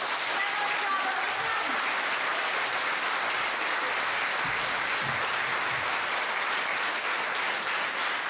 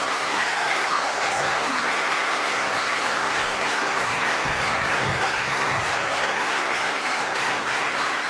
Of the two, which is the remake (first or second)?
second